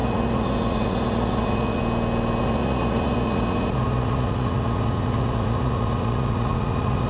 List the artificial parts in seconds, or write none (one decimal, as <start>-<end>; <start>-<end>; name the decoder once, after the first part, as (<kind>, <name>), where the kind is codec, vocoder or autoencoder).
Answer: 0.0-1.8 (vocoder, Vocos); 2.4-7.1